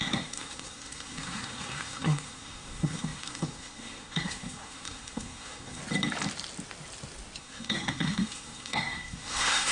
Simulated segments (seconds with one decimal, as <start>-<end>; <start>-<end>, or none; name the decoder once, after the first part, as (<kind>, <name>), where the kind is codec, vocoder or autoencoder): 0.0-5.8 (codec, SNAC); 7.4-9.7